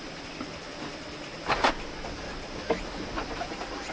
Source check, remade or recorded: recorded